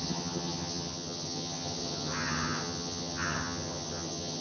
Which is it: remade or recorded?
remade